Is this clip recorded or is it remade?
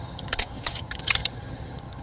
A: remade